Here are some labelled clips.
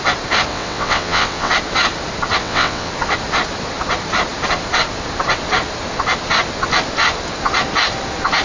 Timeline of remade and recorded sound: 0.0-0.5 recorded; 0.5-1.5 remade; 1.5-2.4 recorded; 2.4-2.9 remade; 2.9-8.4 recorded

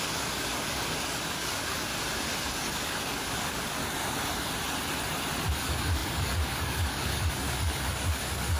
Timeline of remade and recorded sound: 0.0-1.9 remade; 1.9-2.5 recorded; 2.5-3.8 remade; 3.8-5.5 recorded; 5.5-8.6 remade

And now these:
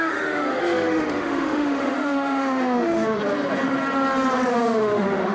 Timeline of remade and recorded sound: 0.0-3.2 remade; 3.2-4.5 recorded; 4.5-5.3 remade

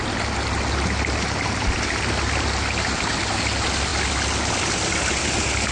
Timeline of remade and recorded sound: 0.0-5.7 recorded